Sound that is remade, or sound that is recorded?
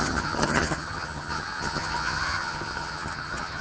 remade